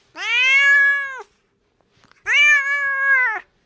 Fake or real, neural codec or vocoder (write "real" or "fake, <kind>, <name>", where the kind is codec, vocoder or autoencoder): real